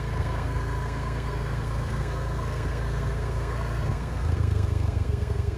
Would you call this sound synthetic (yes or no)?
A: yes